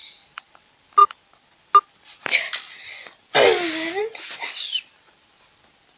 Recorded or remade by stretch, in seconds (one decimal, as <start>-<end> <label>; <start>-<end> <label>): 0.0-6.0 recorded